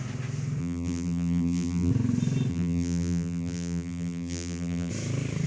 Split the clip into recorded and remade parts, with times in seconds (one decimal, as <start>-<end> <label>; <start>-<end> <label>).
0.0-0.6 recorded; 0.6-1.9 remade; 1.9-2.5 recorded; 2.5-4.9 remade; 4.9-5.5 recorded